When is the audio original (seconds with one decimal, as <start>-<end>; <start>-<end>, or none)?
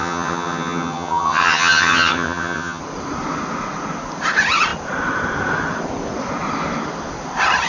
2.8-7.7